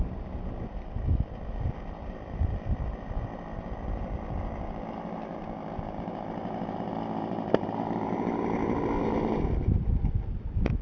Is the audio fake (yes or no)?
no